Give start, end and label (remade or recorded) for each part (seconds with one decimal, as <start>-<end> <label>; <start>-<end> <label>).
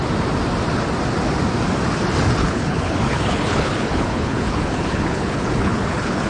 0.0-2.4 recorded; 2.4-6.3 remade